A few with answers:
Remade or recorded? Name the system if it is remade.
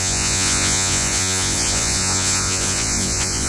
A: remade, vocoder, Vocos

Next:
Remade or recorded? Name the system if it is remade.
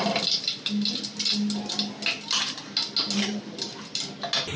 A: recorded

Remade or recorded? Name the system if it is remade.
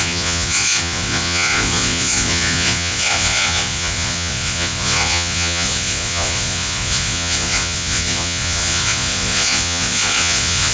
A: remade, vocoder, Vocos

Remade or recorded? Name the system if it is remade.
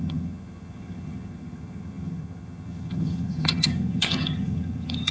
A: remade, vocoder, HiFi-GAN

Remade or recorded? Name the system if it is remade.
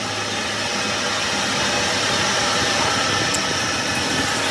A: recorded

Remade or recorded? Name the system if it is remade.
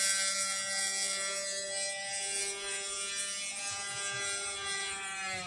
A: recorded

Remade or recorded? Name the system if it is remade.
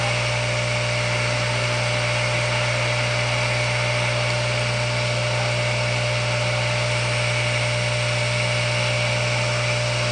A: recorded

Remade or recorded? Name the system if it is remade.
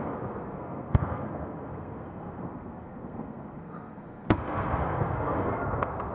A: remade, codec, SNAC